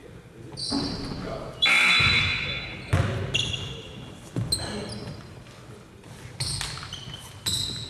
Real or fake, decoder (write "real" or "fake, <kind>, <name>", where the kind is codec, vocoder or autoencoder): real